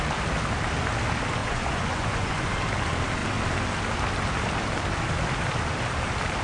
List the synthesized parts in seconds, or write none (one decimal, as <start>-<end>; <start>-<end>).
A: 1.4-2.5